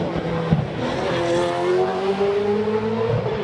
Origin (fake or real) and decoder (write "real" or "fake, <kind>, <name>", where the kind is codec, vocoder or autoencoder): real